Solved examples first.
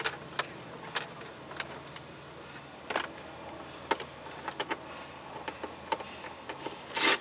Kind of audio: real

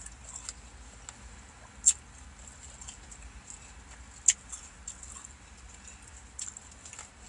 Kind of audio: real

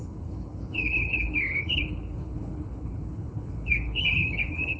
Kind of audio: fake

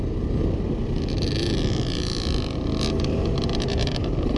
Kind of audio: real